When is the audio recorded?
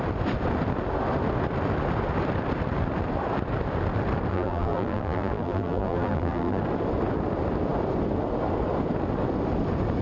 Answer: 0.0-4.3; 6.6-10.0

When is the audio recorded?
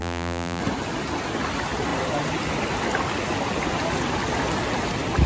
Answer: 0.6-5.3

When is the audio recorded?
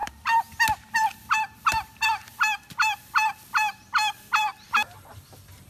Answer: 0.0-4.5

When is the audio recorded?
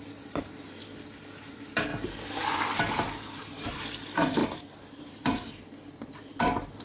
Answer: 0.8-1.4; 1.9-2.6; 4.4-5.0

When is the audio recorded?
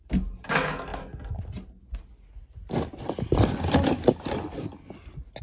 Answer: 0.0-5.4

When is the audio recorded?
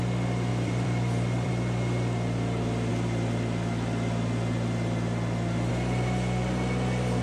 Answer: 0.0-0.5; 1.5-7.2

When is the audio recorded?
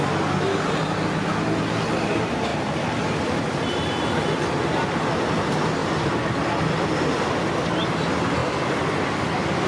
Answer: 0.0-2.5; 4.0-9.7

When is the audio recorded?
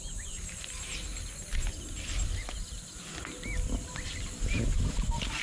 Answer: 1.1-4.3